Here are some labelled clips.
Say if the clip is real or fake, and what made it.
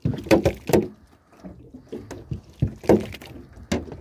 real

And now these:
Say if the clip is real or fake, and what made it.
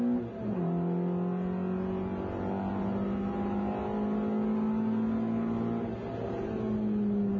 real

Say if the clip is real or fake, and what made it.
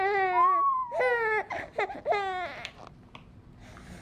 real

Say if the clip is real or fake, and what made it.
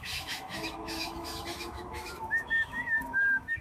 fake, autoencoder, DAC-VAE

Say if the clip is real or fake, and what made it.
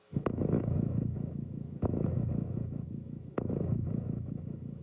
fake, autoencoder, DAC-VAE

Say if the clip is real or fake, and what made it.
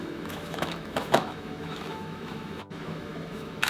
fake, autoencoder, DAC-VAE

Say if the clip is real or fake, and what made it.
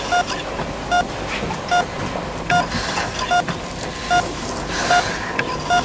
real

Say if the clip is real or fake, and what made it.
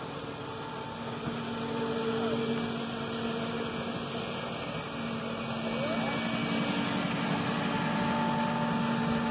real